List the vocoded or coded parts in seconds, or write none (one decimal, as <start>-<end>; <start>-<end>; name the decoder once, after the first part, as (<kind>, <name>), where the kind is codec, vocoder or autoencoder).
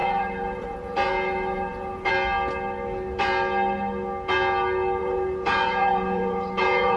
0.0-2.1 (vocoder, Vocos); 5.0-7.0